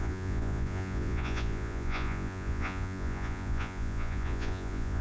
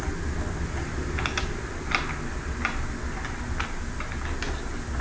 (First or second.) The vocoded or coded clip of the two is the first